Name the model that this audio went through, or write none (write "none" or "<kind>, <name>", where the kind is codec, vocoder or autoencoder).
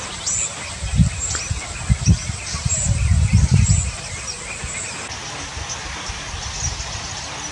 none